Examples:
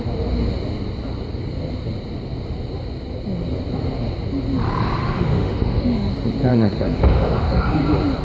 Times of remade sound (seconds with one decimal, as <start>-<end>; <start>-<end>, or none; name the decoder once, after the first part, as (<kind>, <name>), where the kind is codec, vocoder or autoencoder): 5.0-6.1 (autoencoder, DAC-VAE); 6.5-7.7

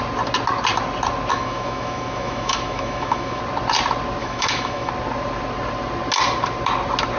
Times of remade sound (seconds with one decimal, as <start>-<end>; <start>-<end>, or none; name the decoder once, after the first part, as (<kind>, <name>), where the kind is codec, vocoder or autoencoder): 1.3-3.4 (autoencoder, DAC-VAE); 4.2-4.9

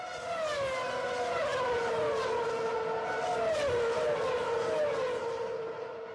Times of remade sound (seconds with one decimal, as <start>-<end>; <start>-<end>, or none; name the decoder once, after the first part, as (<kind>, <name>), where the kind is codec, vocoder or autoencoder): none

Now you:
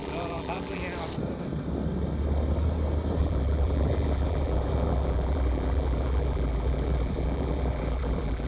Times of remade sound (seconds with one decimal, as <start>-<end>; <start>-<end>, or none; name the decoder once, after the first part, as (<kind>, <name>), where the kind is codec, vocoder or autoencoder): 0.0-0.8 (vocoder, BigVGAN v2); 3.2-8.5

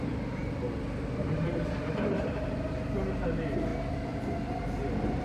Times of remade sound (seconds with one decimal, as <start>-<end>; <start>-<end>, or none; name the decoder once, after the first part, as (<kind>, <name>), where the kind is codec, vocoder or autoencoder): none

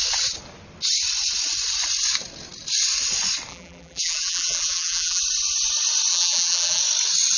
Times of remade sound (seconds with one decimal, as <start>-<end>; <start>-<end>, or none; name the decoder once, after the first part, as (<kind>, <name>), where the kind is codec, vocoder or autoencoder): 3.5-5.2 (vocoder, BigVGAN v2); 6.1-6.8

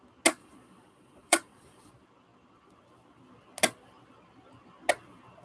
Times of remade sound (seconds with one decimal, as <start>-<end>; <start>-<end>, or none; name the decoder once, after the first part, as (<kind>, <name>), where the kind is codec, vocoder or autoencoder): 0.4-1.9 (vocoder, Vocos)

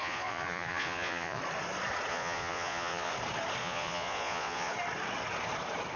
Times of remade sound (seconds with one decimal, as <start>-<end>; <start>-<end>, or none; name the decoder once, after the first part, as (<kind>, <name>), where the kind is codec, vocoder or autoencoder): 0.0-1.4 (vocoder, Vocos); 2.1-3.1; 3.6-4.7